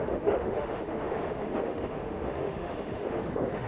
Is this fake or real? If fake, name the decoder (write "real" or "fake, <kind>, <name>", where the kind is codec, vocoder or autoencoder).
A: fake, autoencoder, DAC-VAE